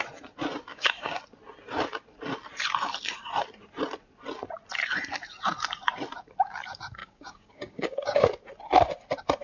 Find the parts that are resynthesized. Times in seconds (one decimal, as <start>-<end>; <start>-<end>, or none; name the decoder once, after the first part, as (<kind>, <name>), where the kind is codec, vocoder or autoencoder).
0.7-1.2 (codec, DAC); 7.0-8.3